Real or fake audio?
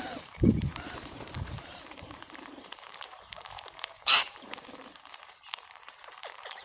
fake